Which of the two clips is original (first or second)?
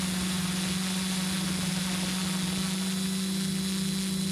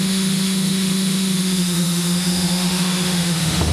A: first